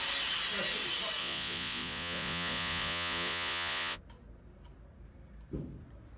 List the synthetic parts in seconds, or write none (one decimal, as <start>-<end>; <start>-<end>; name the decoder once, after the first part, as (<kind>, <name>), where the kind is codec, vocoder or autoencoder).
1.2-4.0 (vocoder, Vocos)